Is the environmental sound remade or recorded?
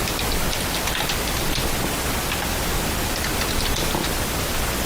recorded